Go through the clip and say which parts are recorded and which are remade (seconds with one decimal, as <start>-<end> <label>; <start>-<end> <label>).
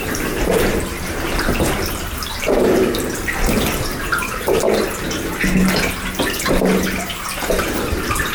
0.0-0.7 remade; 0.7-2.4 recorded; 2.4-2.8 remade; 2.8-7.0 recorded; 7.0-8.3 remade